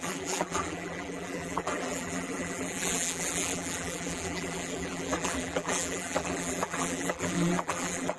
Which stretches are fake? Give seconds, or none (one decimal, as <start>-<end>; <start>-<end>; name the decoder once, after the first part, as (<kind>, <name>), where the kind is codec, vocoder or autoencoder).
0.0-8.2 (vocoder, BigVGAN v2)